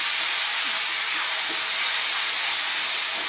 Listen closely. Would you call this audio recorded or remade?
recorded